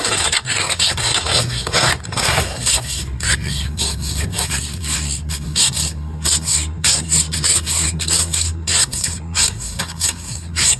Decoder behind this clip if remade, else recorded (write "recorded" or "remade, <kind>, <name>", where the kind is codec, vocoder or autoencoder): remade, codec, SNAC